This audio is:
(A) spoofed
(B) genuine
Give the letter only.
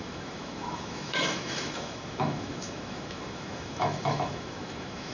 A